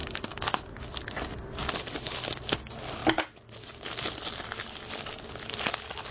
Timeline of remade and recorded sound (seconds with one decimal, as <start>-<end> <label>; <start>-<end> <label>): 0.0-6.1 recorded